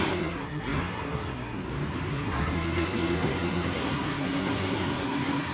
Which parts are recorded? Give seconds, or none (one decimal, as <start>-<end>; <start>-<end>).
1.6-2.1